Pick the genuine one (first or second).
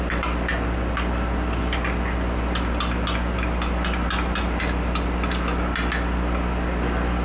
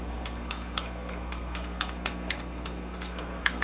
first